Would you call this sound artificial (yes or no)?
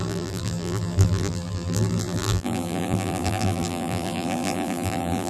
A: yes